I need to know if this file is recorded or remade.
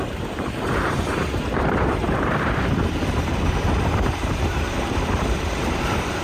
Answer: remade